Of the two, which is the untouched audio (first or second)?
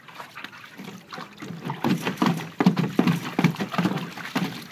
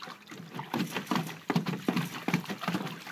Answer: first